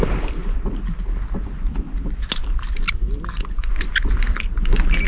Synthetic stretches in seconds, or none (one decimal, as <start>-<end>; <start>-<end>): 0.0-0.4; 3.5-5.1